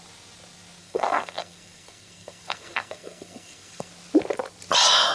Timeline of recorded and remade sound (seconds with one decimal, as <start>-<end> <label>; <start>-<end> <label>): 0.0-0.8 recorded; 0.8-3.9 remade; 3.9-5.1 recorded